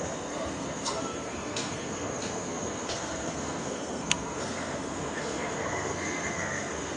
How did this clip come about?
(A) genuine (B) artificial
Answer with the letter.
B